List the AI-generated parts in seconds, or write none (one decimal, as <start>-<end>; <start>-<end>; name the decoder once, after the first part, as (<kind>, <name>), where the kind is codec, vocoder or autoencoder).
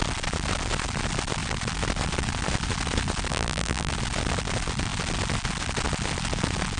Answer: 3.3-3.9 (vocoder, BigVGAN v2)